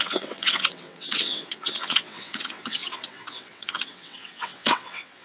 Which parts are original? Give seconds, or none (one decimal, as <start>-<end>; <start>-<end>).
none